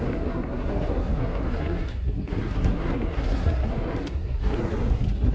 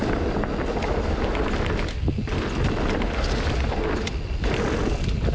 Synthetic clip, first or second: first